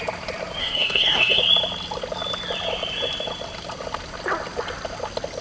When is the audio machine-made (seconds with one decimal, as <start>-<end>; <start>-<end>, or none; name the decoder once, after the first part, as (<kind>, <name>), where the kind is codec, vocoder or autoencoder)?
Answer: 0.6-1.4 (codec, SNAC)